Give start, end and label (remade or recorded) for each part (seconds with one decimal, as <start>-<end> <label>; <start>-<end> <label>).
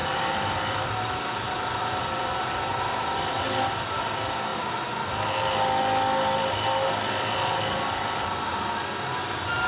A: 0.0-2.4 remade; 2.4-9.7 recorded